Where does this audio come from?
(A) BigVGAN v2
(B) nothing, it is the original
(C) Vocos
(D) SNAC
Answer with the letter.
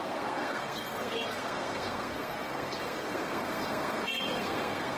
D